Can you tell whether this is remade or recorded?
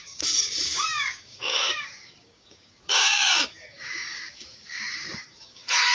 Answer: remade